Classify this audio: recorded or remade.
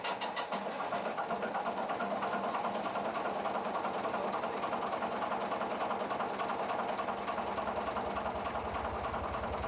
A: recorded